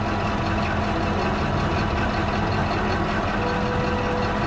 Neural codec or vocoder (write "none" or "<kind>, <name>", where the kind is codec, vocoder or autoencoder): none